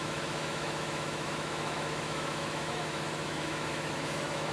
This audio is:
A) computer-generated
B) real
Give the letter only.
A